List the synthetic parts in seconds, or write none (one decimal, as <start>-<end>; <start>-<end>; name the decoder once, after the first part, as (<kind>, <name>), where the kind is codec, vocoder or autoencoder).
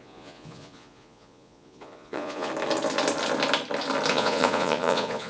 0.0-2.5 (vocoder, Vocos); 4.1-5.3